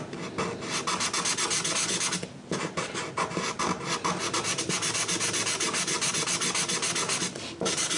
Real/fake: real